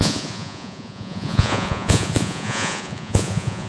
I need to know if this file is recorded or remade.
remade